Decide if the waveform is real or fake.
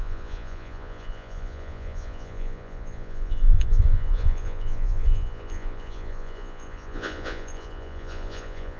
fake